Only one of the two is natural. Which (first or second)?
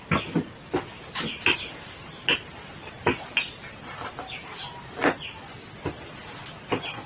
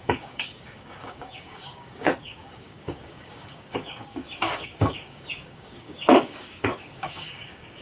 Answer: first